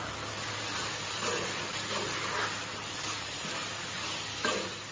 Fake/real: real